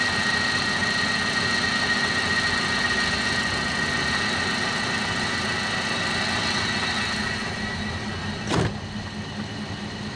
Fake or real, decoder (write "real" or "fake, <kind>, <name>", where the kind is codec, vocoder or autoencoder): real